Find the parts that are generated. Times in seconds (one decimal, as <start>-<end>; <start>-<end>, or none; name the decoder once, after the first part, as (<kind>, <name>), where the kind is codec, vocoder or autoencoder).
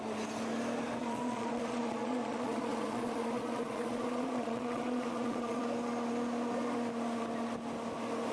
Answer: 1.0-5.6 (vocoder, Vocos)